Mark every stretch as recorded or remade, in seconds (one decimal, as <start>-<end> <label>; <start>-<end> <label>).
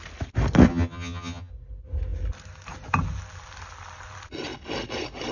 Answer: 0.0-0.7 recorded; 0.7-1.5 remade; 1.5-5.3 recorded